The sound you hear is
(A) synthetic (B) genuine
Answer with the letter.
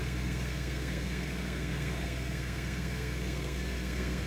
A